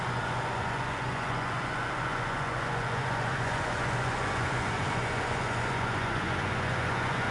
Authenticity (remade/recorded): remade